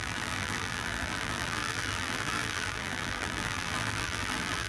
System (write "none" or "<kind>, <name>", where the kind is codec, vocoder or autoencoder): vocoder, BigVGAN v2